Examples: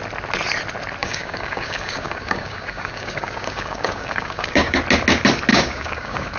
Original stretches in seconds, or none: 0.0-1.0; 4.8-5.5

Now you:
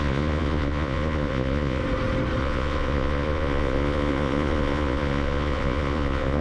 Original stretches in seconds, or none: 1.8-2.4

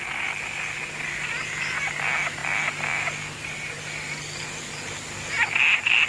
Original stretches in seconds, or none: 0.0-6.1

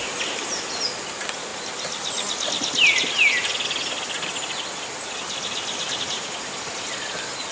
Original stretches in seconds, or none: 0.0-7.5